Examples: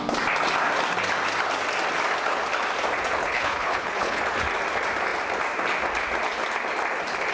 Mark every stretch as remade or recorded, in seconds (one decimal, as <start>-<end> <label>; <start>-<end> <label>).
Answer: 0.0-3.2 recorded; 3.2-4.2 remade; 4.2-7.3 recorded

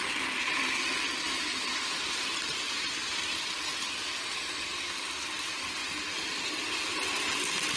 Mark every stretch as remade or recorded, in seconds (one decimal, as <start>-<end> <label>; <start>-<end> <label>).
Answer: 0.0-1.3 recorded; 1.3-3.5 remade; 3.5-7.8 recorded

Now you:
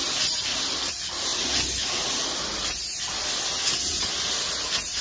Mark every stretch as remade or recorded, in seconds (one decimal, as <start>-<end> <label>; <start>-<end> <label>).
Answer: 0.0-5.0 recorded

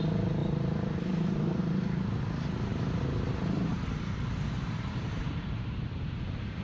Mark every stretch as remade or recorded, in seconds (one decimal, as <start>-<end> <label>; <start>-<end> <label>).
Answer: 0.0-0.4 recorded; 0.4-1.6 remade; 1.6-2.7 recorded; 2.7-6.6 remade

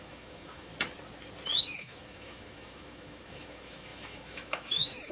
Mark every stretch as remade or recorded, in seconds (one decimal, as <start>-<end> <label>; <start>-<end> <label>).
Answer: 0.0-0.7 remade; 0.7-1.6 recorded; 1.6-5.1 remade

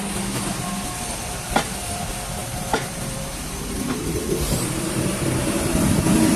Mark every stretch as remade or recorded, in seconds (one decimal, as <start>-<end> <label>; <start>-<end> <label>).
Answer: 0.0-2.4 recorded; 2.4-6.4 remade

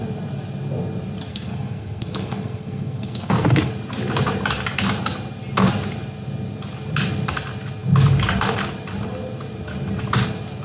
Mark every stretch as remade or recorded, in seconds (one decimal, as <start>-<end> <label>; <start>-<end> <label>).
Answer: 0.0-1.3 recorded; 1.3-3.7 remade; 3.7-10.6 recorded

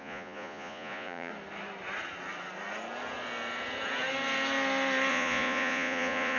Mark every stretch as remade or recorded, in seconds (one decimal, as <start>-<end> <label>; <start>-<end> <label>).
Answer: 0.0-1.3 remade; 1.3-5.1 recorded; 5.1-6.4 remade